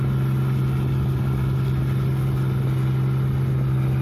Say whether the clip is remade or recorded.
recorded